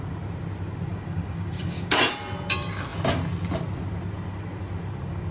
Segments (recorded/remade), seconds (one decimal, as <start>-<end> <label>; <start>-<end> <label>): 0.0-0.9 recorded; 0.9-1.9 remade; 1.9-5.3 recorded